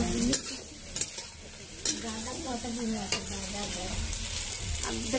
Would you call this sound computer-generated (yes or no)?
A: no